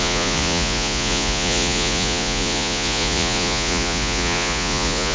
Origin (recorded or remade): remade